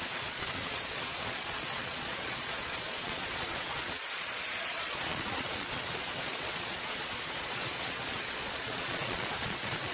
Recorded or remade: remade